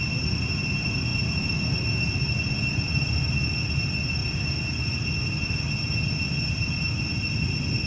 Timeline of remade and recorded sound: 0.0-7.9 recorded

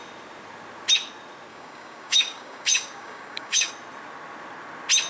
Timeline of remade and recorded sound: 0.0-1.5 recorded; 1.5-3.7 remade; 3.7-5.1 recorded

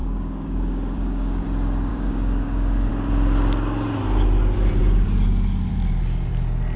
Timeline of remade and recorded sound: 0.0-1.4 remade; 1.4-1.9 recorded; 1.9-2.9 remade; 2.9-6.8 recorded

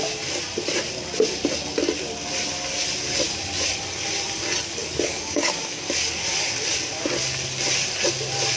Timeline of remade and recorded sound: 0.0-4.8 recorded; 4.8-6.2 remade; 6.2-8.6 recorded

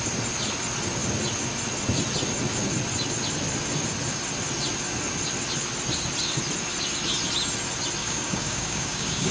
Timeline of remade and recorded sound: 0.0-8.0 recorded; 8.0-9.3 remade

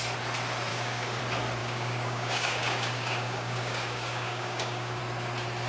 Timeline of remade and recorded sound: 0.0-0.7 recorded; 0.7-1.2 remade; 1.2-1.6 recorded; 1.6-5.0 remade; 5.0-5.7 recorded

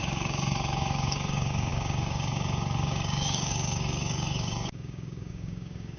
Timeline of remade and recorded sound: 0.0-6.0 remade

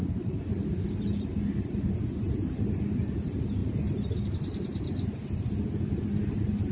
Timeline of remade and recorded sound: 0.0-6.7 recorded